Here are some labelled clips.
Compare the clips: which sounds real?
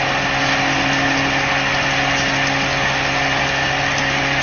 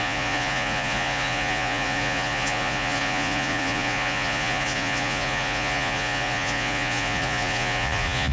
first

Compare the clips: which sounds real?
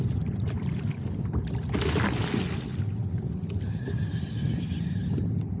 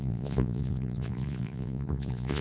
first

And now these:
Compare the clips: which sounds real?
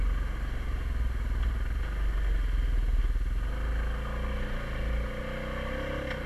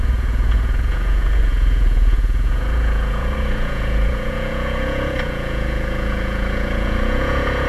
first